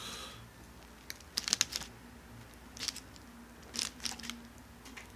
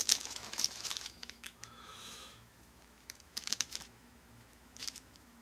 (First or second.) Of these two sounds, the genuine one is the first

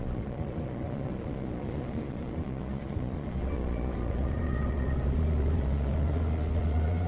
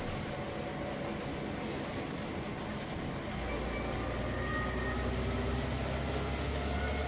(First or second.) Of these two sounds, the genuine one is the second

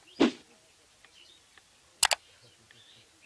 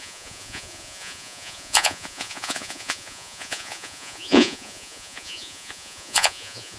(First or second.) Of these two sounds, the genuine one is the first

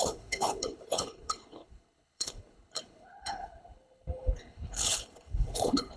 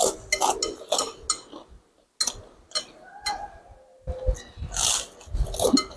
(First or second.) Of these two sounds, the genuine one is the second